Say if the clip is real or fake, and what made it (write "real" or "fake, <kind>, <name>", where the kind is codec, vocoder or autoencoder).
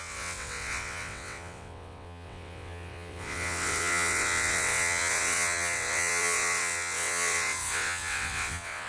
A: fake, vocoder, WaveNeXt